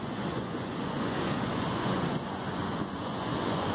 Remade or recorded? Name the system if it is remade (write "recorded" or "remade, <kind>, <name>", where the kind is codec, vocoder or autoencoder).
remade, vocoder, Vocos